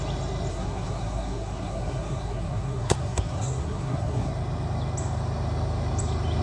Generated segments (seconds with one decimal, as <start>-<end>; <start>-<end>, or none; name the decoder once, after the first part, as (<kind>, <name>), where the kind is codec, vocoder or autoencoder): 0.5-4.3 (codec, SNAC)

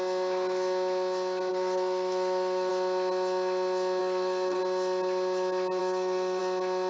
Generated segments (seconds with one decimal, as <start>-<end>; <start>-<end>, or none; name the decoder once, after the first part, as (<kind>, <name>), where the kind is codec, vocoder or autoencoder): 1.5-2.7 (codec, SNAC); 4.0-4.6; 5.8-6.4

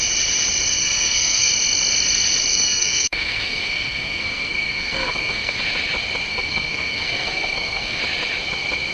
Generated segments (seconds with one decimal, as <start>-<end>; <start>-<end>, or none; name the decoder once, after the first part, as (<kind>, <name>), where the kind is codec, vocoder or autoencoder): 0.8-1.5 (codec, SNAC); 2.5-5.6; 6.3-8.0

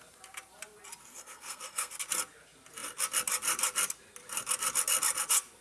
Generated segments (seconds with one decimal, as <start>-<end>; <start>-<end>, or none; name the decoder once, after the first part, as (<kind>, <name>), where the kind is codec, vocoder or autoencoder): 1.1-1.9 (codec, SNAC)

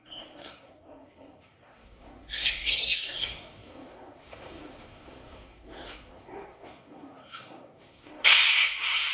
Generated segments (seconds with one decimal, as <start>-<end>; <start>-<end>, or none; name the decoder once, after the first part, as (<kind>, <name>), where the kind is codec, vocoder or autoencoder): 0.0-9.1 (codec, SNAC)

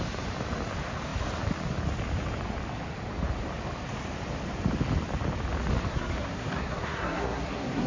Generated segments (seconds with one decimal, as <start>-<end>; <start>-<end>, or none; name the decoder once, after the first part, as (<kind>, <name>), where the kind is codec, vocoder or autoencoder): 5.9-7.9 (codec, SNAC)